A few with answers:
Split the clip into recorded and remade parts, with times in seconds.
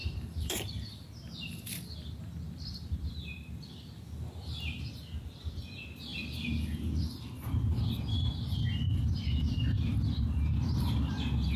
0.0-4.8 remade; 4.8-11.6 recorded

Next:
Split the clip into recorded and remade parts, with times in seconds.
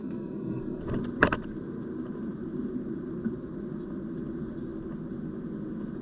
0.0-0.8 remade; 0.8-6.0 recorded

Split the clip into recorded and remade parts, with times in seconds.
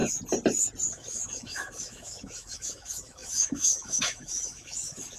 0.0-0.9 recorded; 0.9-5.2 remade